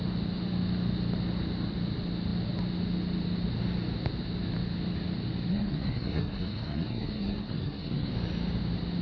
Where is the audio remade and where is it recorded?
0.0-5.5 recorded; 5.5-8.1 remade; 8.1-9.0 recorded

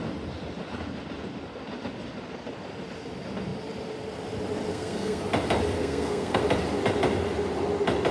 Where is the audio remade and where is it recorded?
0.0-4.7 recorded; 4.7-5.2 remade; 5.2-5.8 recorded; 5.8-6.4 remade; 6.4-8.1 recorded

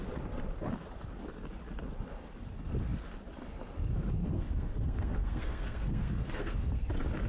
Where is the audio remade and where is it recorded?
0.0-4.2 recorded; 4.2-6.8 remade; 6.8-7.3 recorded